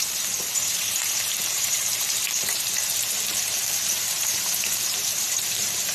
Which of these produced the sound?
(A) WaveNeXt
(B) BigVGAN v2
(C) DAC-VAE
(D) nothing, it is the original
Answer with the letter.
B